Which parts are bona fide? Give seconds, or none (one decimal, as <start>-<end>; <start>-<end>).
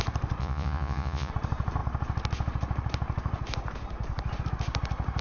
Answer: 0.0-0.4; 1.3-5.2